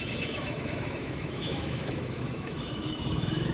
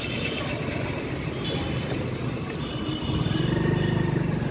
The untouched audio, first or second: second